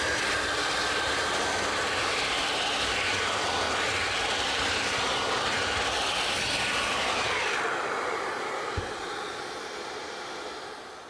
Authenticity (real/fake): fake